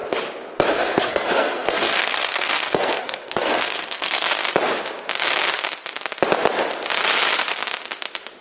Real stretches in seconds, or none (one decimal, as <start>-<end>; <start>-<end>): 0.0-0.7; 4.4-8.4